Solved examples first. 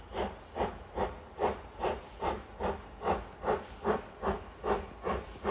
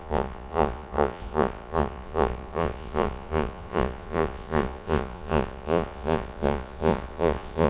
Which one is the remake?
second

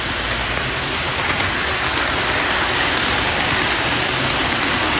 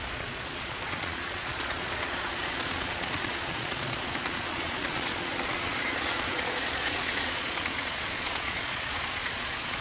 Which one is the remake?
second